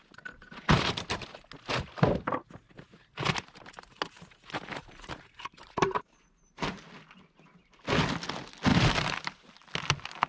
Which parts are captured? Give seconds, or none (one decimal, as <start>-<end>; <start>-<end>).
0.0-5.8; 7.0-8.7; 9.5-10.3